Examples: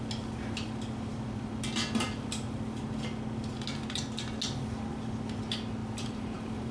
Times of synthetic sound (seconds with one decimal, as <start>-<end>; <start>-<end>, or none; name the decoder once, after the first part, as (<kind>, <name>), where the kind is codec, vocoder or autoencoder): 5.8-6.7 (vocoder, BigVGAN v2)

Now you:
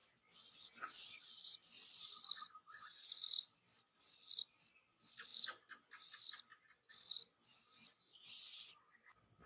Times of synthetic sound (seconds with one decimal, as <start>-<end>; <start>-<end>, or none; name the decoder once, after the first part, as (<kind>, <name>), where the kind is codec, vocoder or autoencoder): 1.2-5.3 (vocoder, BigVGAN v2); 6.9-7.5; 8.3-9.5

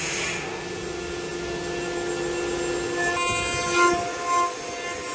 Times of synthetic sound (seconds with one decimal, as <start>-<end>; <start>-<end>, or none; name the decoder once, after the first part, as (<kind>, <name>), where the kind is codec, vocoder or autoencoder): none

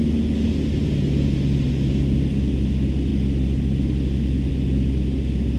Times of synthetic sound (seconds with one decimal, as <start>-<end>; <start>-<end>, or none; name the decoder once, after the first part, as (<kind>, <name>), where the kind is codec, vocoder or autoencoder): none